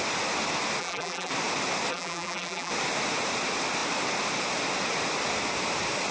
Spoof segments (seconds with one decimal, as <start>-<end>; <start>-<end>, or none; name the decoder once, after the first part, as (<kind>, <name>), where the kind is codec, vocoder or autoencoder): 0.8-1.3 (vocoder, BigVGAN v2); 1.9-2.7